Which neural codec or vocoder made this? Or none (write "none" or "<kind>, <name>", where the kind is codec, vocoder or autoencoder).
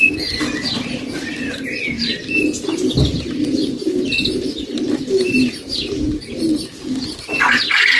none